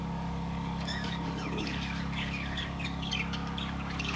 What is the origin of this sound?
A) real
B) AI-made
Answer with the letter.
B